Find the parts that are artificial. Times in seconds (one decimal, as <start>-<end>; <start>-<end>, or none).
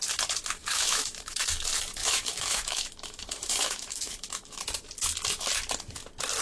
0.6-1.5; 2.0-4.6